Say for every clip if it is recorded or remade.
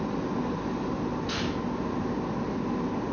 recorded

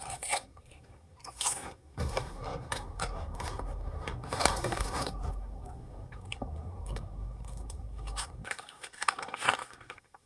remade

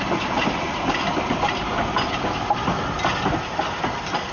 recorded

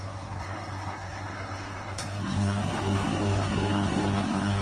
remade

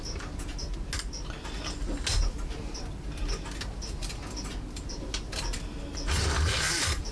recorded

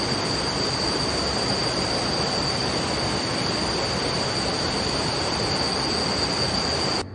recorded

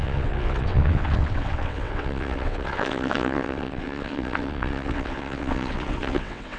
remade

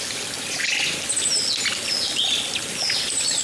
recorded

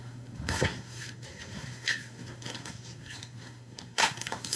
remade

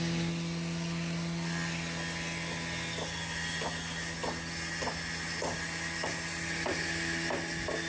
recorded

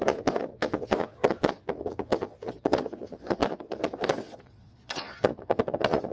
remade